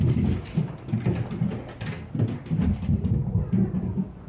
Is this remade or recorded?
recorded